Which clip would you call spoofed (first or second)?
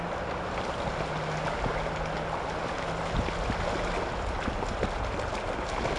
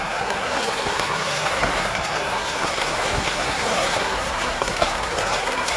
second